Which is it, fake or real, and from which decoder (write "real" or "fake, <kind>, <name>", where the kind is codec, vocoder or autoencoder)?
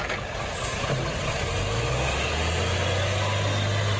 real